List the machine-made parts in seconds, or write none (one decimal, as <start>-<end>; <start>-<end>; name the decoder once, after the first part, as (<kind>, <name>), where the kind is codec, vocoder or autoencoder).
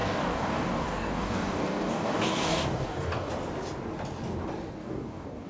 0.0-3.3 (codec, DAC); 4.8-5.5